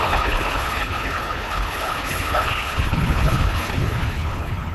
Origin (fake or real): fake